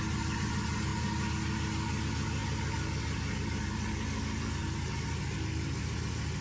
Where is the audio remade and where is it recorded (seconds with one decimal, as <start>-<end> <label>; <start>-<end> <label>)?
0.0-6.4 recorded